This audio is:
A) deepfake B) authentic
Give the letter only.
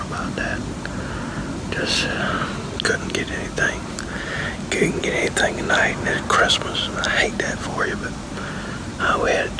B